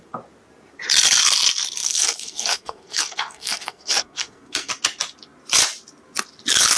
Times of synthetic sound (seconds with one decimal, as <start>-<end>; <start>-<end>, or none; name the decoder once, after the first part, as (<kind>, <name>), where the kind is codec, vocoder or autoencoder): 1.8-4.7 (codec, SNAC)